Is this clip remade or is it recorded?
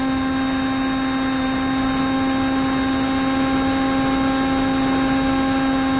recorded